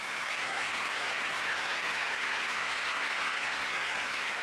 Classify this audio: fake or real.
fake